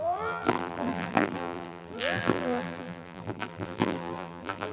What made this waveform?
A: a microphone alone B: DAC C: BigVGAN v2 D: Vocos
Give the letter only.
C